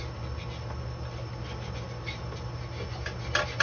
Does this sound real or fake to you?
real